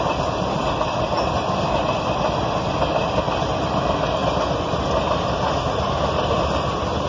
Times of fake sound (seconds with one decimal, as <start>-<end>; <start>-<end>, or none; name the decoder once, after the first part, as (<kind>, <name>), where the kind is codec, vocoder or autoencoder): none